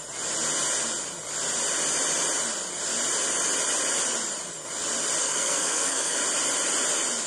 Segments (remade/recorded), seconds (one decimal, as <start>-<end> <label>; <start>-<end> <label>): 0.0-5.2 recorded; 5.2-6.2 remade; 6.2-7.3 recorded